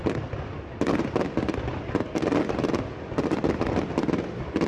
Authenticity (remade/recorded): recorded